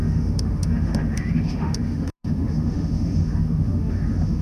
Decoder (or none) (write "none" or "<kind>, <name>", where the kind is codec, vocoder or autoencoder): autoencoder, DAC-VAE